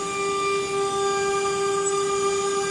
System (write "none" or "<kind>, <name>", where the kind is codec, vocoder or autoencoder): none